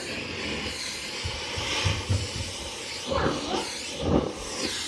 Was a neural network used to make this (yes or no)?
no